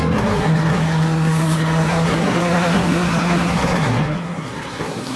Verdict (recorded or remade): remade